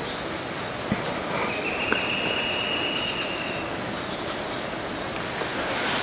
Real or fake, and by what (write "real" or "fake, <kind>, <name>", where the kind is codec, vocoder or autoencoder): real